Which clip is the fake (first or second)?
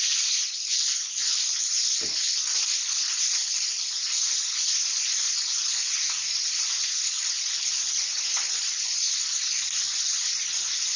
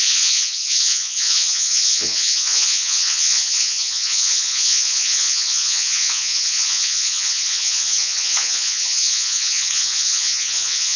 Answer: second